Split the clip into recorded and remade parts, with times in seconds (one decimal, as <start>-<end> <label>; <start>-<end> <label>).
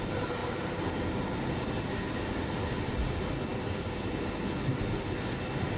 0.0-0.4 recorded; 0.4-2.9 remade; 2.9-5.8 recorded